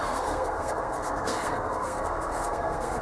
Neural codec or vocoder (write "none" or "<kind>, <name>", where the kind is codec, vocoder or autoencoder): codec, SNAC